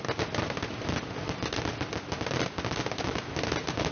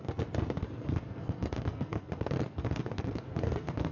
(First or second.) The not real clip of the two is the second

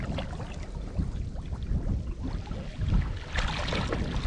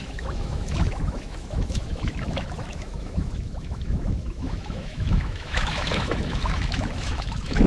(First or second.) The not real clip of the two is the second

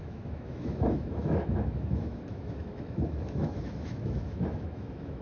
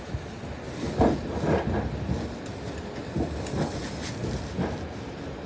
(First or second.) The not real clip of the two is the first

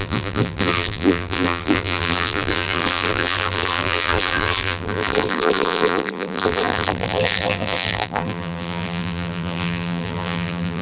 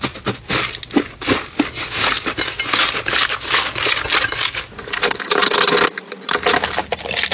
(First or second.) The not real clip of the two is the first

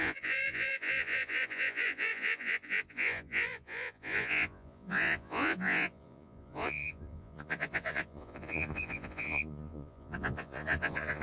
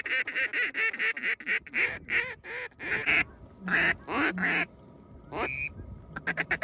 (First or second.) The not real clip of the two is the first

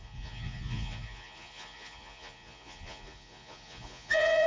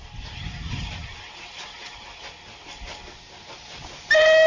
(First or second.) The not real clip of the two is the first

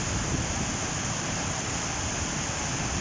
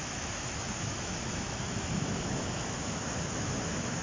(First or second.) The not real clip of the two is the second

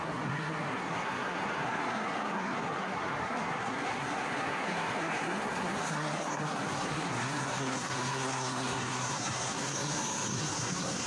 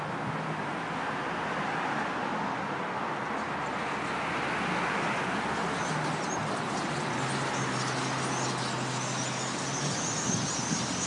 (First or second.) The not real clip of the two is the first